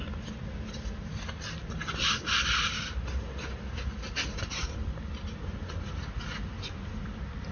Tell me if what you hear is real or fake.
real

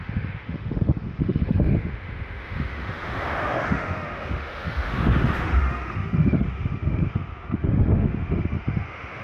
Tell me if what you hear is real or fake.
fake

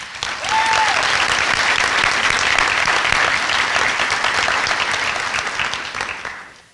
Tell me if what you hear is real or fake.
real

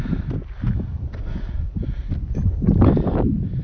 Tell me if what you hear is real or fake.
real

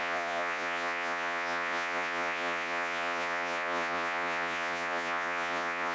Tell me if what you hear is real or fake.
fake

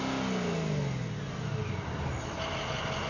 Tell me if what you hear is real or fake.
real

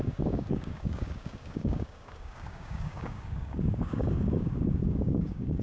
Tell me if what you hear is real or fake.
fake